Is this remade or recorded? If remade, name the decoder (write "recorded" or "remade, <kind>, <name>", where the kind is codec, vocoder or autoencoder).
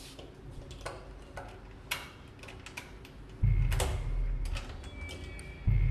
recorded